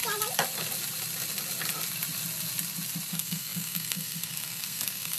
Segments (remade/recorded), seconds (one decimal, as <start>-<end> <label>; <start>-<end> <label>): 0.0-3.1 recorded; 3.1-5.2 remade